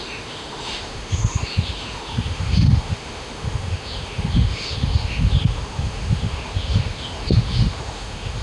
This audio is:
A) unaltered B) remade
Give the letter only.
B